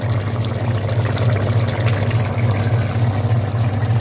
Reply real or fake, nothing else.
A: real